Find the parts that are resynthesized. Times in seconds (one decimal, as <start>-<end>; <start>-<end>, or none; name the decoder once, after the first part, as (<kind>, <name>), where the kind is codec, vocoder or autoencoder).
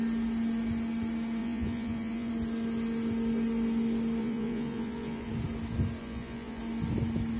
1.4-2.3 (vocoder, Vocos); 4.2-5.3; 6.0-6.6